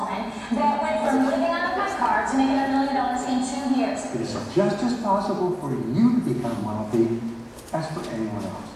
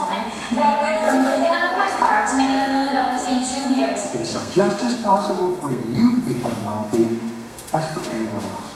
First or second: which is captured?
first